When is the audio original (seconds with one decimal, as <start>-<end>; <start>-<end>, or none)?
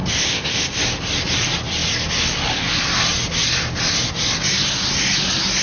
0.8-5.6